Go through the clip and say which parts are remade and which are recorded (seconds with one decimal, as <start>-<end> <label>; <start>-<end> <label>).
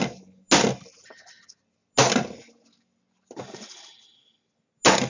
0.0-5.1 recorded